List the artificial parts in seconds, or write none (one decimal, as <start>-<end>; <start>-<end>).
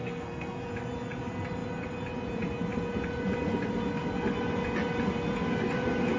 0.0-0.6